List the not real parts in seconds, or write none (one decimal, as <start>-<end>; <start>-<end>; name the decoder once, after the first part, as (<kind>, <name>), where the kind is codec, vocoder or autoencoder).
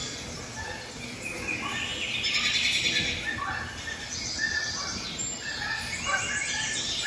none